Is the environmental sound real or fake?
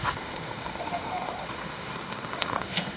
fake